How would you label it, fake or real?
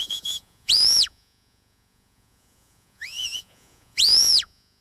fake